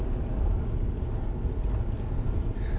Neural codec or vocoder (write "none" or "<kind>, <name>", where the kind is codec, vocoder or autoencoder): none